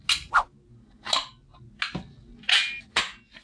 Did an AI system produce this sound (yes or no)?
no